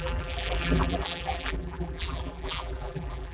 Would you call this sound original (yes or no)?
no